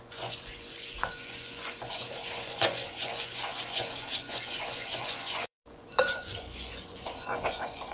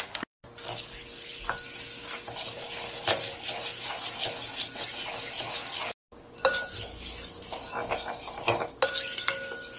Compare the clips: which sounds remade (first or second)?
first